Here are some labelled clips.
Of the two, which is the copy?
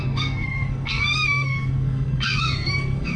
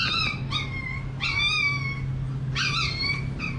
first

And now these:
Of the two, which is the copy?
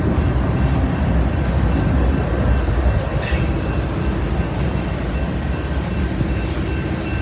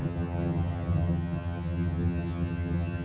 second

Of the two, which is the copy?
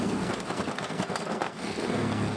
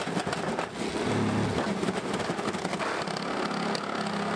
first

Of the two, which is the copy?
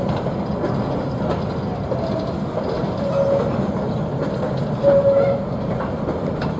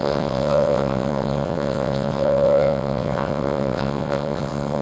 second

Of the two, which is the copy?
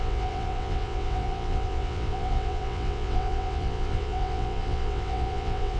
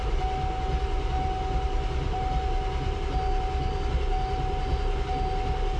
first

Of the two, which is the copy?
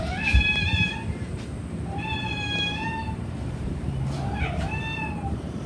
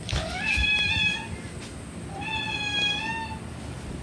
first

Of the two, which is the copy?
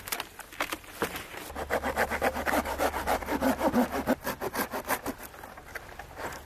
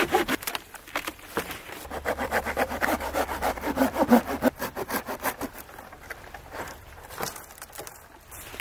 second